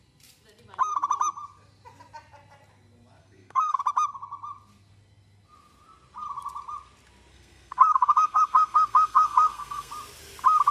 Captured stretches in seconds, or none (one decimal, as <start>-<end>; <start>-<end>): 0.0-3.2; 3.8-7.3; 9.9-10.7

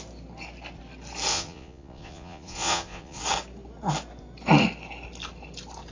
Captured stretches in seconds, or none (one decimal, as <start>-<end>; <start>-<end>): 0.0-1.3; 3.2-5.9

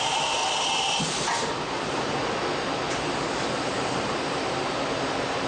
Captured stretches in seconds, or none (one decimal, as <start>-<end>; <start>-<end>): 0.4-1.7; 2.2-3.7

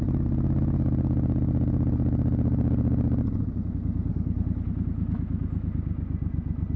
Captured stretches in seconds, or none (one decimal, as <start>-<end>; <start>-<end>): 0.0-4.1; 4.7-6.8

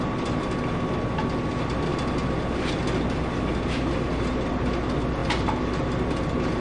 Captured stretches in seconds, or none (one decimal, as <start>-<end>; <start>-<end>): 0.0-6.6

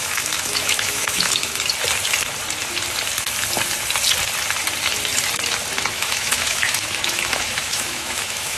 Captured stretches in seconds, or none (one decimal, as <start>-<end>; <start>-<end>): 1.5-5.9

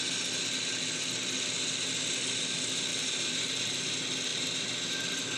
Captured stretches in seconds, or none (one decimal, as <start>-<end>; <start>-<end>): 0.0-2.9; 3.8-5.4